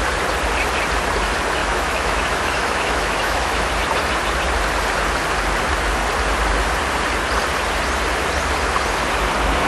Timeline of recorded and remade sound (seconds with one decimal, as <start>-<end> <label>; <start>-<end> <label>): 0.0-1.6 recorded; 1.6-3.7 remade; 3.7-9.7 recorded